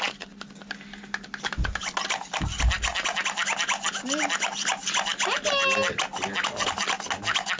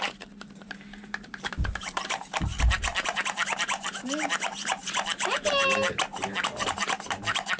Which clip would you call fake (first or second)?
second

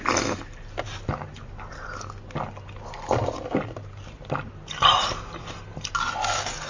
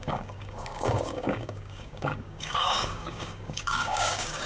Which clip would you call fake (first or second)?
second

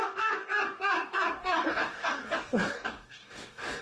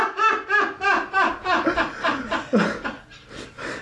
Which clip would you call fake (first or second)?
first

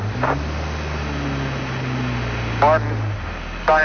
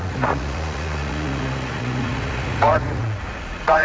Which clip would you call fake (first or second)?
second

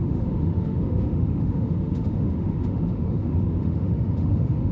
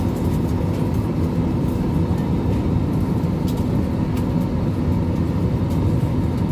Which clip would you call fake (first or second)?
first